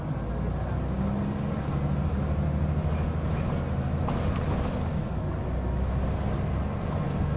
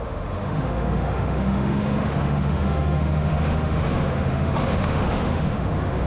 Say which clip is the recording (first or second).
first